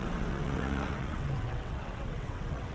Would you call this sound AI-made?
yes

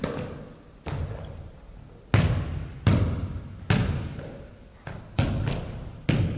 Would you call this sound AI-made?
no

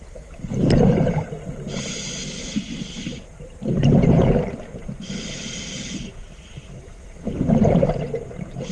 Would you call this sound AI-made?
yes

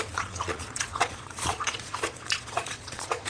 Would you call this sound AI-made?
yes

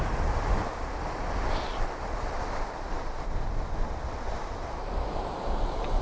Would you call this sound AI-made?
no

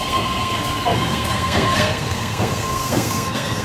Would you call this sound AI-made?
yes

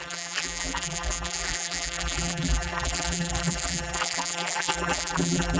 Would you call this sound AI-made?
yes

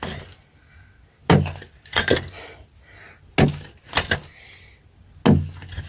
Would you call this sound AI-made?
no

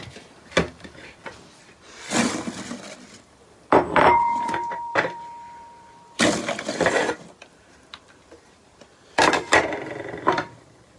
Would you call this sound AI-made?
yes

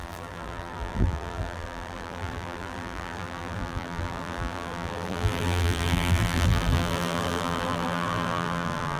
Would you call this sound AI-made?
yes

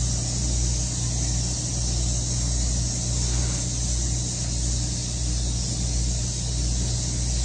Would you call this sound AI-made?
no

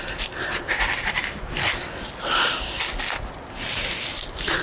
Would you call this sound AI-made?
no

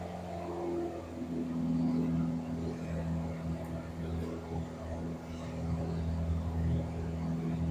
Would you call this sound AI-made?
no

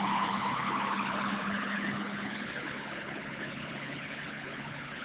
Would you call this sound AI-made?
yes